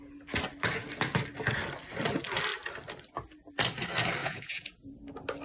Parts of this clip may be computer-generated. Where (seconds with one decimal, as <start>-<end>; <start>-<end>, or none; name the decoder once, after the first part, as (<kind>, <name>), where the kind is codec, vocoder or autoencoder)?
4.2-5.0 (vocoder, Vocos)